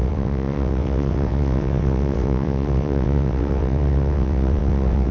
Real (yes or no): no